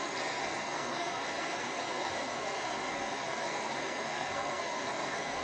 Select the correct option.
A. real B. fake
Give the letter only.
B